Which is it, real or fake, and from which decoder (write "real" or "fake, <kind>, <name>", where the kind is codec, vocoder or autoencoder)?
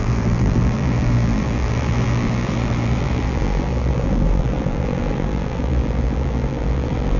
fake, vocoder, BigVGAN v2